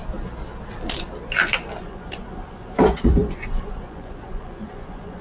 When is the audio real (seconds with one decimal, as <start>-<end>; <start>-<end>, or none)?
0.0-1.8

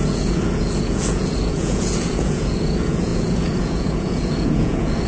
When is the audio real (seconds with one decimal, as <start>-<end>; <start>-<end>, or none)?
none

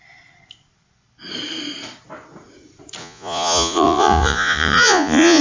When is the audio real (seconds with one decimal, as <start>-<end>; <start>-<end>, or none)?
0.0-3.0

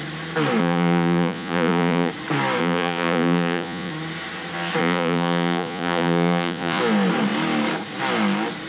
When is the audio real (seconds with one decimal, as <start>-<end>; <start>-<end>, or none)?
0.0-0.6; 2.1-2.6; 3.9-4.8; 6.8-8.7

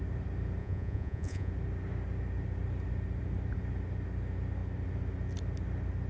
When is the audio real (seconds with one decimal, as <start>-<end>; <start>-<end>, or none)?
0.0-0.6; 1.5-6.1

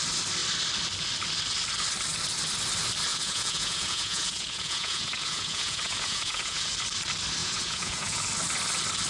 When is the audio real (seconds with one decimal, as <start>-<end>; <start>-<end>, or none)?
0.0-3.1; 6.7-7.4; 8.2-9.1

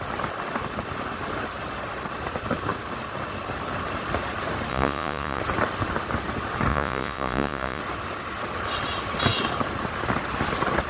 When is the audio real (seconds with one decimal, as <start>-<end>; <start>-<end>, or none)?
0.0-4.7; 5.4-6.7; 7.8-10.9